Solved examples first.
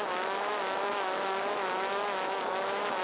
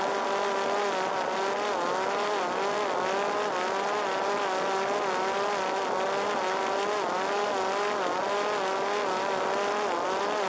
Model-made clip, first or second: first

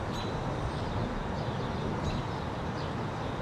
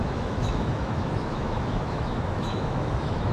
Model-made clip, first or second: second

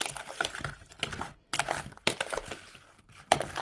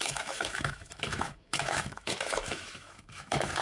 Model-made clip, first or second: second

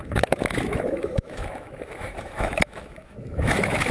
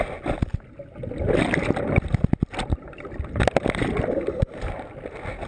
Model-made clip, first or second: first